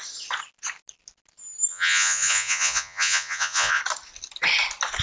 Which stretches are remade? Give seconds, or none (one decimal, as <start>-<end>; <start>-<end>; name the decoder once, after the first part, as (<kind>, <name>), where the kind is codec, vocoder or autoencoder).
1.7-3.8 (vocoder, Vocos)